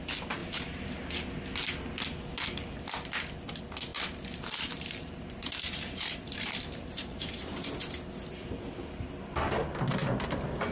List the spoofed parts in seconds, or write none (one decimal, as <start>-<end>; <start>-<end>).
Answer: 0.4-1.1; 3.9-7.7; 10.0-10.7